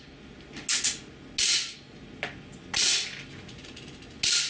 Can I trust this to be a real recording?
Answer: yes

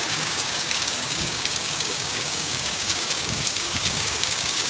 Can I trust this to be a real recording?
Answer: no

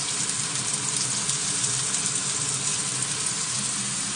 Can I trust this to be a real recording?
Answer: yes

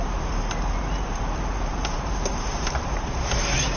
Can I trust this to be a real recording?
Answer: no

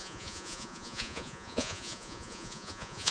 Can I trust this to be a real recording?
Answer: no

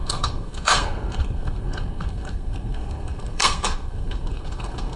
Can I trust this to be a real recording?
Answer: no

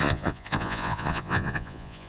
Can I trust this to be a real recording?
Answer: no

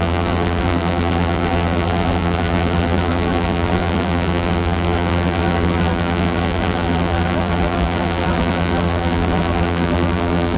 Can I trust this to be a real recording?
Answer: no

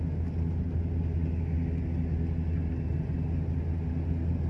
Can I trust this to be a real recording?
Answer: yes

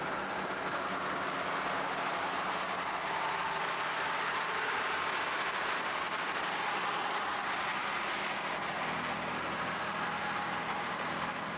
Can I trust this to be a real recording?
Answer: yes